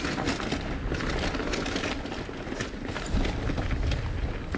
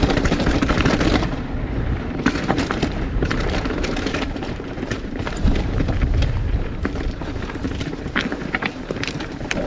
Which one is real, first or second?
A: first